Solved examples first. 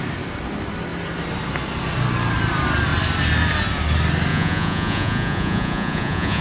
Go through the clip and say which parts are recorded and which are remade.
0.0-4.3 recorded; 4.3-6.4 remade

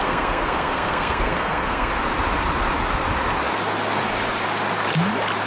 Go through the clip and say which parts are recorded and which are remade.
0.0-1.9 remade; 1.9-5.5 recorded

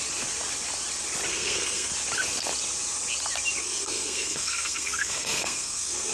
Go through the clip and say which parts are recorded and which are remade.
0.0-1.3 recorded; 1.3-1.9 remade; 1.9-3.6 recorded; 3.6-6.1 remade